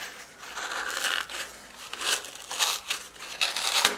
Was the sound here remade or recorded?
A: recorded